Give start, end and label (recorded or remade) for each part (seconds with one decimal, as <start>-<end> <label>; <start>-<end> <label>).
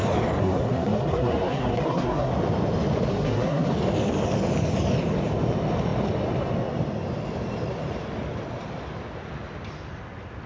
0.0-0.4 recorded; 0.4-2.3 remade; 2.3-3.1 recorded; 3.1-3.7 remade; 3.7-10.5 recorded